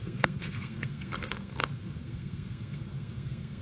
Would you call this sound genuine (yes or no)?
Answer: no